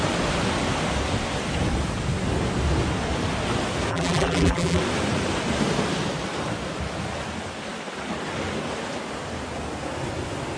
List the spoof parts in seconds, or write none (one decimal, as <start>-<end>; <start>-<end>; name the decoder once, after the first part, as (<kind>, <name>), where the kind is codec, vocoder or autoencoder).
3.9-4.8 (vocoder, BigVGAN v2)